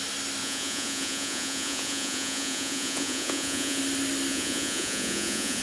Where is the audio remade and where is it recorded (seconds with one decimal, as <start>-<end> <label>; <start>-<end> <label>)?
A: 0.0-0.4 recorded; 0.4-3.8 remade; 3.8-4.3 recorded; 4.3-5.6 remade

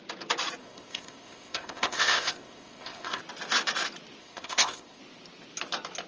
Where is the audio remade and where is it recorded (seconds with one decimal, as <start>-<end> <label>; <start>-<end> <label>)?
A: 0.0-0.6 recorded; 0.6-3.2 remade; 3.2-4.2 recorded; 4.2-5.0 remade; 5.0-6.1 recorded

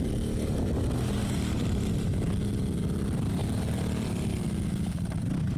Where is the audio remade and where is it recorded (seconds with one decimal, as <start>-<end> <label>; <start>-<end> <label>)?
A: 0.0-1.2 recorded; 1.2-2.3 remade; 2.3-5.6 recorded